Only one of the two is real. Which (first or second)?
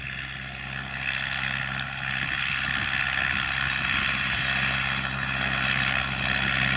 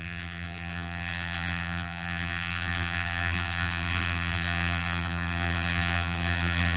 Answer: first